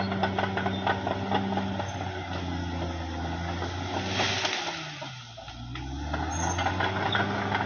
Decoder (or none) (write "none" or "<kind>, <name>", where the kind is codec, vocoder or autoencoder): none